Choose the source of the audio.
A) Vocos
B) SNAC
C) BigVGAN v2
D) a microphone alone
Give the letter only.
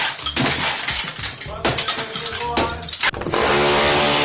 D